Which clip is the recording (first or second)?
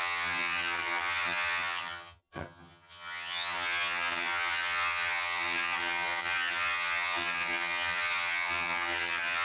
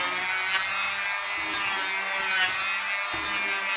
second